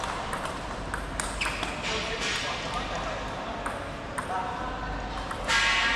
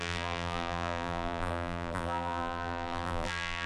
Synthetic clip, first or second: second